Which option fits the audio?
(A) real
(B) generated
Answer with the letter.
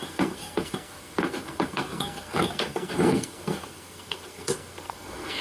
B